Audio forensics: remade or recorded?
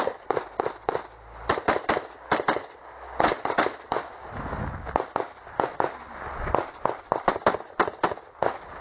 recorded